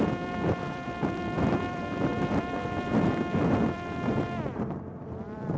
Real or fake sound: fake